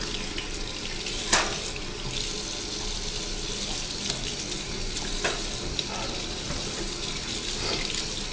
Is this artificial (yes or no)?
no